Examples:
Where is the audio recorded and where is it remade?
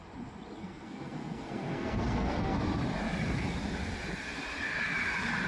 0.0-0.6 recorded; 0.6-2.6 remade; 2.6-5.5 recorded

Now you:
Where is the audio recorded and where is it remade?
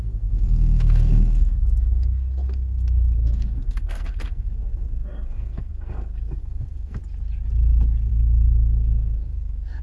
0.0-7.0 remade; 7.0-8.1 recorded; 8.1-9.8 remade